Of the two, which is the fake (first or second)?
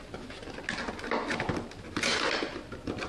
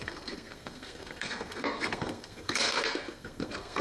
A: second